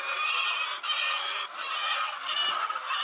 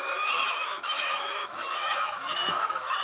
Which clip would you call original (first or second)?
first